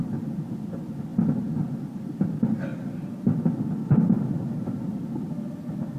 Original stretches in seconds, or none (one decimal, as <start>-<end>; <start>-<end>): 0.0-6.0